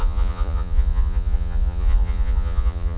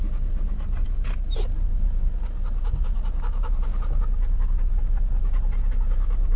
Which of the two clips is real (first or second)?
second